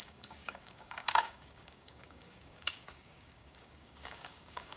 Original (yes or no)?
no